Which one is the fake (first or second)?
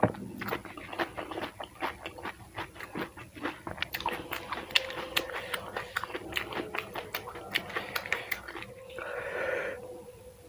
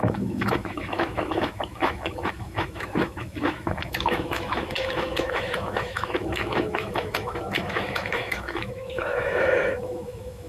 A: second